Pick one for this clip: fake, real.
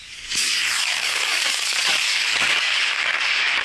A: fake